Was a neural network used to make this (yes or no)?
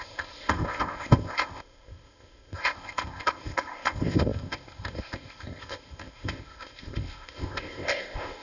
yes